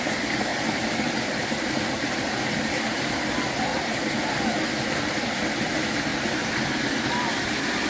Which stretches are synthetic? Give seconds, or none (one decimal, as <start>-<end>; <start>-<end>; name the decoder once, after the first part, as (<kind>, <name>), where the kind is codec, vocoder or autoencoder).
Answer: 0.0-3.7 (vocoder, BigVGAN v2); 4.9-6.1; 6.9-7.9